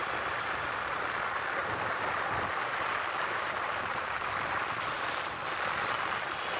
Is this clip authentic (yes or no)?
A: no